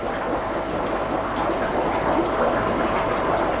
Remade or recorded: recorded